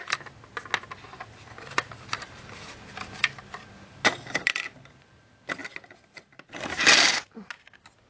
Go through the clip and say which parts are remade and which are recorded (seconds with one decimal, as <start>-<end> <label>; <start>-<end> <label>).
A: 0.0-8.1 recorded

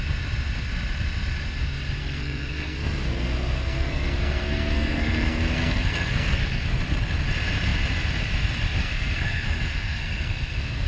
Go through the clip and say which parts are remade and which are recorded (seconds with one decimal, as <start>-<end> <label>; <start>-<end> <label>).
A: 0.0-2.0 recorded; 2.0-6.8 remade; 6.8-8.8 recorded; 8.8-10.9 remade

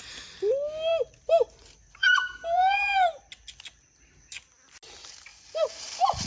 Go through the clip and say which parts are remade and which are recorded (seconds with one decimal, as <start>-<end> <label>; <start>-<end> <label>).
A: 0.0-2.0 recorded; 2.0-3.2 remade; 3.2-6.3 recorded

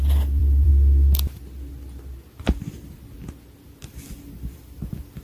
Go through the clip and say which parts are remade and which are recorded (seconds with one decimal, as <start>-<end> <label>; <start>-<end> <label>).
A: 0.0-0.7 remade; 0.7-3.8 recorded; 3.8-5.2 remade

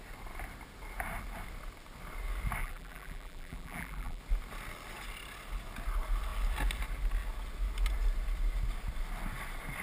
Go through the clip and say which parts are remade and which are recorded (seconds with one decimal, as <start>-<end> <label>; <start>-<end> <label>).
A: 0.0-2.6 recorded; 2.6-4.2 remade; 4.2-9.8 recorded

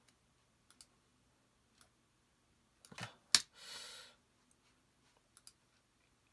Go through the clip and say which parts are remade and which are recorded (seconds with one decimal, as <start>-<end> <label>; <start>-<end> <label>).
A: 0.0-6.3 recorded

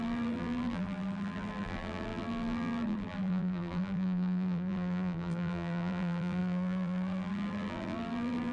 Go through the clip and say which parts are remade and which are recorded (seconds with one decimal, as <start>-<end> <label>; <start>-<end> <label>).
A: 0.0-8.5 remade

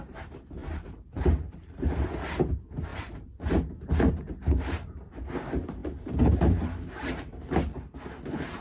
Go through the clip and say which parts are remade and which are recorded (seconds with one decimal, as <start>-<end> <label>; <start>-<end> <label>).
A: 0.0-0.6 recorded; 0.6-1.9 remade; 1.9-2.9 recorded; 2.9-4.1 remade; 4.1-5.8 recorded; 5.8-6.9 remade; 6.9-8.6 recorded